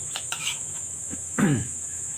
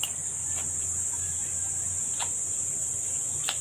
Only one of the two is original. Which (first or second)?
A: second